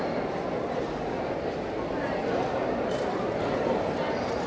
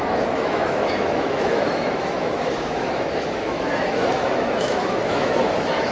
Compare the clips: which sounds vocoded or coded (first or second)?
second